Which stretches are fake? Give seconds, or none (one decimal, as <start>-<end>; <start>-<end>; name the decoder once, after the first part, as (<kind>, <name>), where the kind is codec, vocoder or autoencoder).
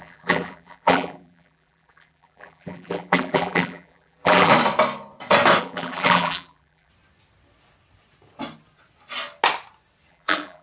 0.0-4.5 (vocoder, BigVGAN v2); 5.6-6.9; 10.1-10.6